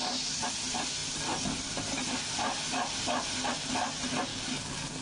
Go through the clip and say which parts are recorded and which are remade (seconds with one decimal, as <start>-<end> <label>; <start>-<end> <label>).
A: 0.0-4.3 recorded; 4.3-5.0 remade